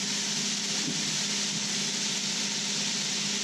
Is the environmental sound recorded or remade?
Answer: recorded